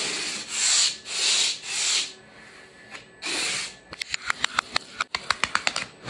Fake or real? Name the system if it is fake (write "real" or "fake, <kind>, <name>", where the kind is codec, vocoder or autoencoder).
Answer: real